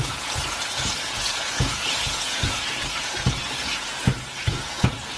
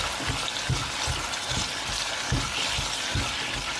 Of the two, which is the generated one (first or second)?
first